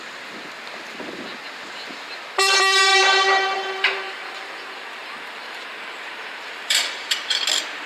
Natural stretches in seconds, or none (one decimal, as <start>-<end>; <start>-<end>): 0.0-2.9; 7.4-7.9